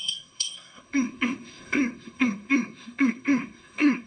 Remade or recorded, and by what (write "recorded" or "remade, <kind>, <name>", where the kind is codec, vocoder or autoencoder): remade, codec, SNAC